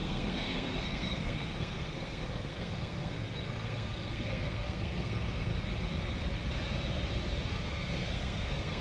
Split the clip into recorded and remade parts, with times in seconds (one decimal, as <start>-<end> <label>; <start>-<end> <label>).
0.0-5.5 remade; 5.5-7.5 recorded; 7.5-8.8 remade